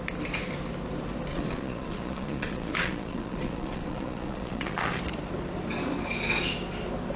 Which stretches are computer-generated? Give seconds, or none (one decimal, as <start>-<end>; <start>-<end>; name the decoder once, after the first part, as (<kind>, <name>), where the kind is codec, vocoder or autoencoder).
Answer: 1.3-5.0 (vocoder, Vocos)